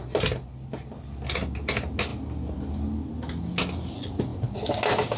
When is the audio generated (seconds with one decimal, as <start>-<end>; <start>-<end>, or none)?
none